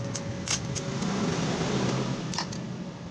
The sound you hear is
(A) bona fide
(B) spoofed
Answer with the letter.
A